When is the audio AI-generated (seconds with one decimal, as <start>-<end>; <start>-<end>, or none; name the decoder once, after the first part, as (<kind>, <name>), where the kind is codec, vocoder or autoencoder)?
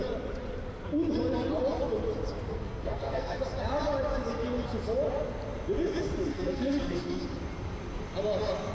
2.5-3.4 (codec, SNAC); 6.3-7.2